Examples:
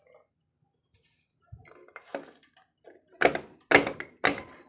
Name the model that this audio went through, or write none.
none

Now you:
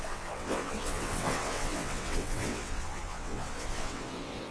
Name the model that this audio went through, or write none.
vocoder, WaveNeXt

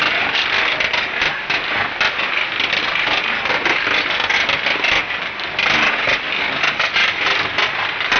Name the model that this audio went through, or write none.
none